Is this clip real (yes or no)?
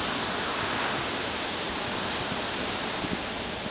yes